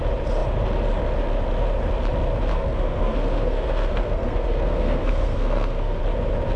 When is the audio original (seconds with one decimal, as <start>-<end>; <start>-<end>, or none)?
0.0-2.5; 6.0-6.6

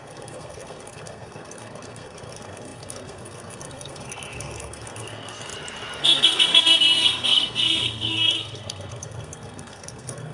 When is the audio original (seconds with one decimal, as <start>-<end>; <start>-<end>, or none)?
5.5-6.0

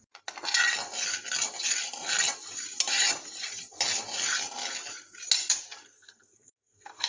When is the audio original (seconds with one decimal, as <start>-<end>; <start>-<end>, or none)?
0.0-5.8

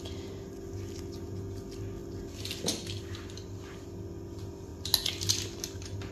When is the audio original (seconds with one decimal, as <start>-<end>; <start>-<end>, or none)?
0.0-6.1

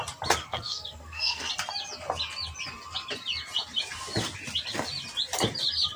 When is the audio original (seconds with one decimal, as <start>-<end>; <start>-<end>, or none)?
0.0-0.4; 1.5-6.0

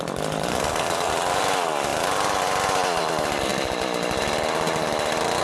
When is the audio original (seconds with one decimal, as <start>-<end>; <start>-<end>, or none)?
0.0-0.5; 1.1-5.4

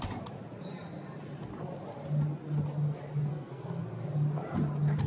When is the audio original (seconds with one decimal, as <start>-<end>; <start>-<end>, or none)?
0.0-3.3; 3.8-5.1